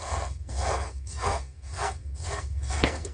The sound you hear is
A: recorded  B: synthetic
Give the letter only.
B